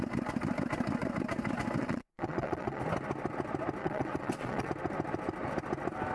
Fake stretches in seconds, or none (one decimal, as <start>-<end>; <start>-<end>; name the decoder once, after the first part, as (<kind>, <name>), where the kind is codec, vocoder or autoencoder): 1.8-2.8 (vocoder, WaveNeXt); 3.8-4.7